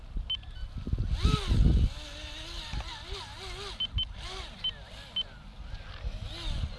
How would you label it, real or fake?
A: real